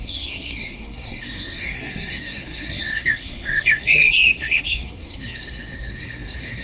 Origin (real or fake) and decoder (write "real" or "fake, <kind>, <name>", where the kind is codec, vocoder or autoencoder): fake, codec, SNAC